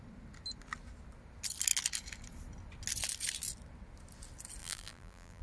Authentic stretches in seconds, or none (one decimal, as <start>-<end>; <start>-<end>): 0.0-4.6